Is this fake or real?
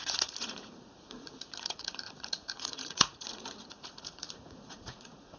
fake